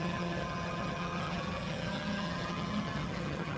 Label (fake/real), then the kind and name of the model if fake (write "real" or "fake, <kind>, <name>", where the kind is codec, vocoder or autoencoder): fake, vocoder, HiFi-GAN